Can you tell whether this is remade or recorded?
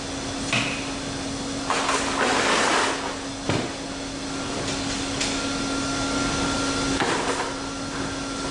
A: recorded